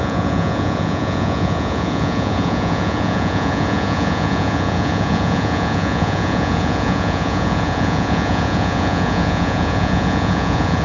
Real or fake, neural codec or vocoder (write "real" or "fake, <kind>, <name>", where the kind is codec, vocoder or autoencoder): fake, vocoder, Vocos